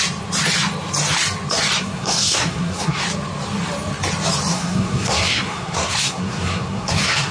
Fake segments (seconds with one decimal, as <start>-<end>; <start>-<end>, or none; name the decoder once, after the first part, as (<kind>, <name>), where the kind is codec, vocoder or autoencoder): 1.8-3.0 (codec, SNAC); 4.5-7.3